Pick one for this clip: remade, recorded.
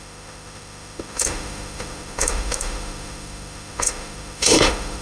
remade